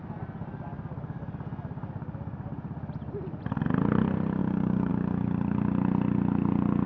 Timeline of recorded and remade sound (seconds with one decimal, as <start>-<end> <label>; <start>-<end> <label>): 0.0-4.4 recorded; 4.4-4.9 remade; 4.9-6.9 recorded